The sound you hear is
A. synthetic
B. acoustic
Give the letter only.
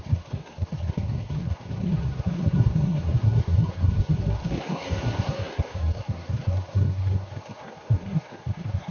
A